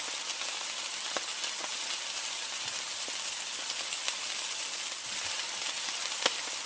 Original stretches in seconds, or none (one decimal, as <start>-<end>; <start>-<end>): 0.0-6.7